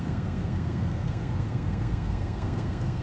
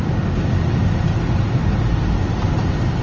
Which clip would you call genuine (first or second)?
second